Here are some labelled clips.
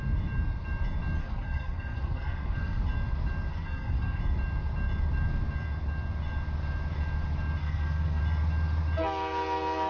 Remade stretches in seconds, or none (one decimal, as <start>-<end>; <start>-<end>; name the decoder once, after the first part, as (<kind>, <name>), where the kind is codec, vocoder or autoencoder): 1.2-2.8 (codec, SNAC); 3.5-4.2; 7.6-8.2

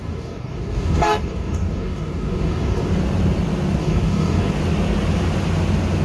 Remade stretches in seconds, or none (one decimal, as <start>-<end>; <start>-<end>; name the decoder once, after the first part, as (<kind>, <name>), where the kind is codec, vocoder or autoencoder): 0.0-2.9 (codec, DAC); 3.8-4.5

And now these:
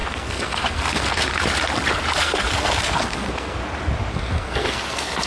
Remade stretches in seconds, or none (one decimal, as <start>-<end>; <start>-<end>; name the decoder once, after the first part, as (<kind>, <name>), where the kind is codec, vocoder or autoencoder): 0.0-1.3 (codec, SNAC); 2.2-3.6; 4.1-5.3

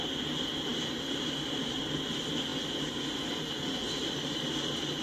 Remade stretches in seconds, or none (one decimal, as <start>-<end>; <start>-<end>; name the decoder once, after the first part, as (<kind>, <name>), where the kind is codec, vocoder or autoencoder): none

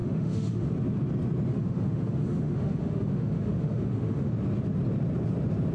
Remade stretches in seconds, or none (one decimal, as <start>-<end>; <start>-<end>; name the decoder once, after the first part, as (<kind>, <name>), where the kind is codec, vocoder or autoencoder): 0.0-0.7 (autoencoder, DAC-VAE); 1.5-4.3

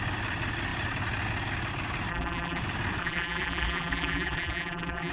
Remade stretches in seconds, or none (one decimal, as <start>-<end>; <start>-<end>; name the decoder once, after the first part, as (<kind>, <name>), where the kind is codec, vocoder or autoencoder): 2.1-2.6 (vocoder, BigVGAN v2); 3.0-5.1

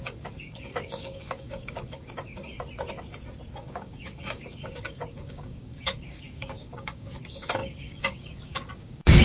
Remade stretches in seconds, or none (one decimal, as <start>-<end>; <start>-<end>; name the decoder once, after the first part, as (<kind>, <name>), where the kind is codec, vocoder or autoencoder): 0.0-2.5 (codec, DAC); 3.6-9.2

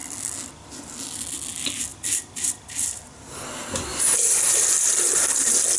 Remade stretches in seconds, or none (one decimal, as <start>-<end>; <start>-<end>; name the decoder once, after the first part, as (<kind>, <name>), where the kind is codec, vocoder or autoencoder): 1.9-3.0 (vocoder, BigVGAN v2); 3.9-4.7